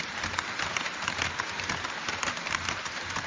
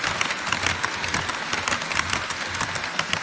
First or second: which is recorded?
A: second